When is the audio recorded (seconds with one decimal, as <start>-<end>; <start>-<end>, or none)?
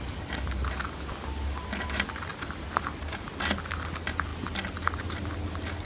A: 0.0-5.9